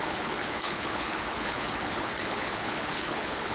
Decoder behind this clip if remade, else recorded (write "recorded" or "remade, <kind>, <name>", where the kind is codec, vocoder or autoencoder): remade, codec, HILCodec